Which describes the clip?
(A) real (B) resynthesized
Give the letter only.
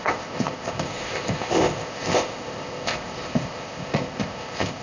B